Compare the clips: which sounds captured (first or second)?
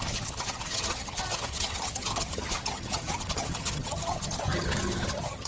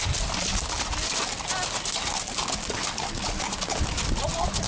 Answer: second